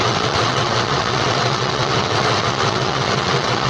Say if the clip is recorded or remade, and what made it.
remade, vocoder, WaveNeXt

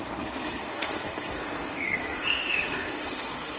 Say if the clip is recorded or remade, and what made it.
remade, codec, SNAC